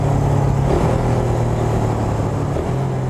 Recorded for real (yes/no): yes